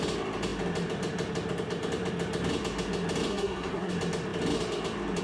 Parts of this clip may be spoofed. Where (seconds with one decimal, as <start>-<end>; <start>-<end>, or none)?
3.3-3.9